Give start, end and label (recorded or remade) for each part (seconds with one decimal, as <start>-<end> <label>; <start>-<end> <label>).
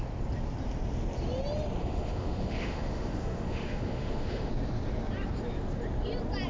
0.0-1.8 recorded; 1.8-4.5 remade; 4.5-6.5 recorded